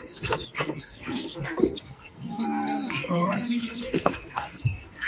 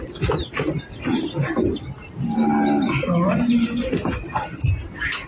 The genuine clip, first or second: second